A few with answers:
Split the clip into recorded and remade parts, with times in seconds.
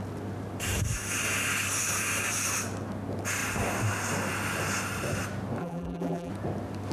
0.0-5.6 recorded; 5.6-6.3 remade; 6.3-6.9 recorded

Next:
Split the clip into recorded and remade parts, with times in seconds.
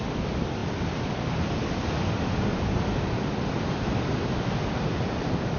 0.0-5.6 recorded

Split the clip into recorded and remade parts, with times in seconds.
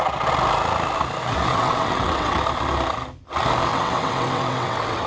0.0-1.2 recorded; 1.2-2.4 remade; 2.4-3.7 recorded; 3.7-5.1 remade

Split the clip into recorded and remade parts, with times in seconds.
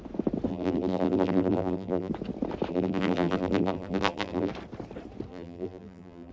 0.0-0.5 recorded; 0.5-2.1 remade; 2.1-2.7 recorded; 2.7-4.5 remade; 4.5-5.3 recorded; 5.3-6.3 remade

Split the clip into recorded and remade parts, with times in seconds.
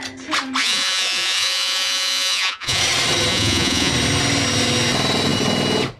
0.0-0.6 recorded; 0.6-2.8 remade; 2.8-3.3 recorded; 3.3-3.9 remade; 3.9-6.0 recorded